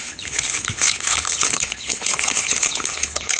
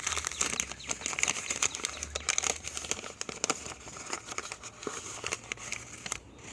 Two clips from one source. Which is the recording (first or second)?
second